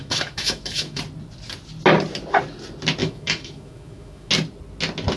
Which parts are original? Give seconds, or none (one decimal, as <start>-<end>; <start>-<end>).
1.0-3.0; 4.3-5.2